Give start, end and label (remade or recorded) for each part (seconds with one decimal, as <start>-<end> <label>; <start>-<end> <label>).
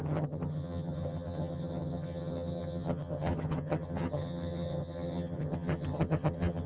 0.0-6.7 remade